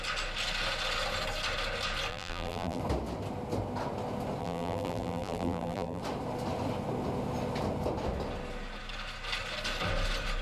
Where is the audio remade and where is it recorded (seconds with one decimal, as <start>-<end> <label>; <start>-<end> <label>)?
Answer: 0.0-2.1 recorded; 2.1-2.8 remade; 2.8-4.4 recorded; 4.4-6.0 remade; 6.0-10.4 recorded